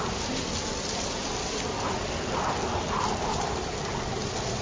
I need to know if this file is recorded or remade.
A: recorded